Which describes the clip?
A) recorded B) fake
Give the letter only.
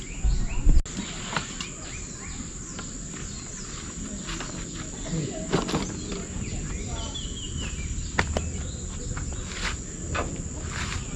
A